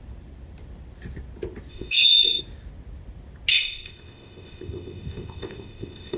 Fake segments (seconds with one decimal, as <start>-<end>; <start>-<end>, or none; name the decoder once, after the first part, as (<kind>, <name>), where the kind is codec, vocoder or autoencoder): 1.7-2.4 (codec, ZipCodec); 3.5-6.2